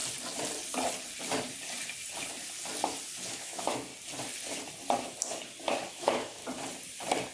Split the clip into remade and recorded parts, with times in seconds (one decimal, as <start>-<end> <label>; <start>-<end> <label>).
0.0-3.3 recorded; 3.3-3.9 remade; 3.9-5.9 recorded; 5.9-6.4 remade; 6.4-7.3 recorded